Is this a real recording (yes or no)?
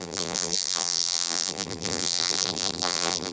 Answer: no